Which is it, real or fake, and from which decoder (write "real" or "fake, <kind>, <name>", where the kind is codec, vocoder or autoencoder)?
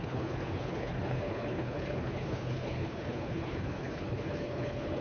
fake, codec, HILCodec